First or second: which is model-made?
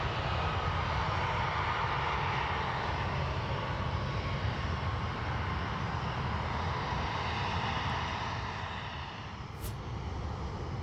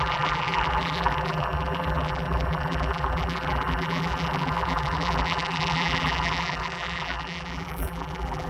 second